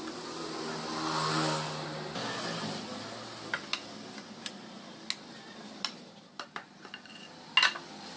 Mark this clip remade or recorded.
recorded